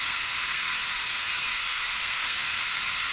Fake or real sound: fake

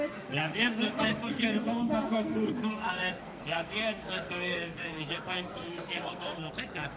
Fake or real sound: fake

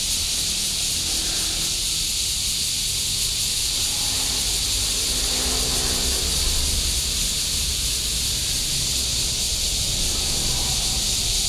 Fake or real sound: real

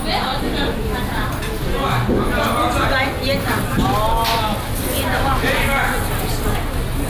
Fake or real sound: real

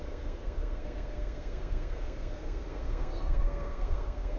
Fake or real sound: fake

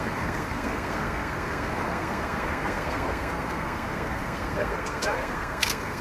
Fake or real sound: fake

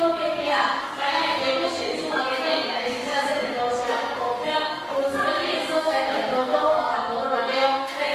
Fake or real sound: fake